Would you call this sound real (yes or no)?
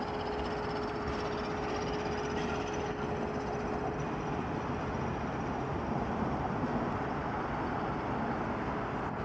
yes